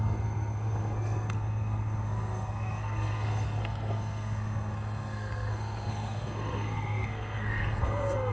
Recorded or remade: remade